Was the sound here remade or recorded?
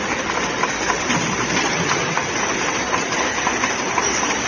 remade